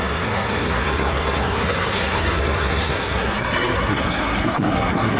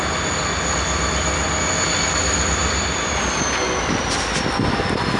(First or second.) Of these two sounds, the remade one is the first